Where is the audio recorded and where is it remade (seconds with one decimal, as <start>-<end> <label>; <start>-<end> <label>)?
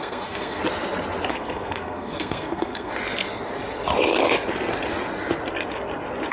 0.0-0.6 remade; 0.6-1.3 recorded; 1.3-2.9 remade; 2.9-6.3 recorded